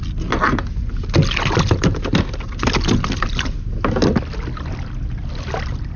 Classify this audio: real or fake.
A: real